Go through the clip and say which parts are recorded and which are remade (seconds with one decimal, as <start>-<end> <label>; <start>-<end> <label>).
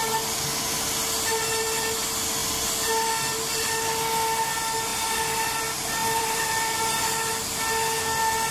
0.0-6.0 recorded; 6.0-6.8 remade; 6.8-8.5 recorded